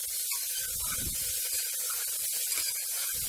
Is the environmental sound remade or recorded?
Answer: remade